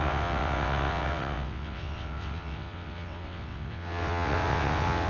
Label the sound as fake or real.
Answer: fake